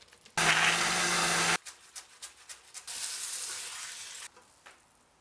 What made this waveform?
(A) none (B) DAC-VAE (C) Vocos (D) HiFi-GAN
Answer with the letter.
A